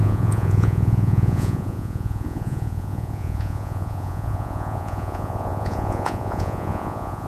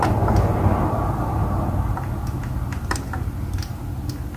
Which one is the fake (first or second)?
first